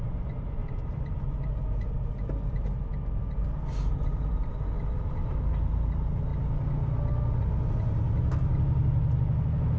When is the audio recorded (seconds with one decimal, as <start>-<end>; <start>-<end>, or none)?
0.0-0.6; 4.5-9.8